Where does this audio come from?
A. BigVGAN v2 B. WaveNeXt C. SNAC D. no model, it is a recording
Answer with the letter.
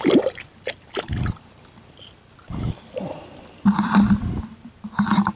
A